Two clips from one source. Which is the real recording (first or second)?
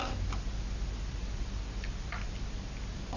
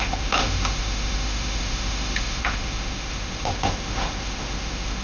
first